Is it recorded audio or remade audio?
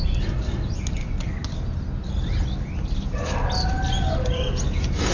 recorded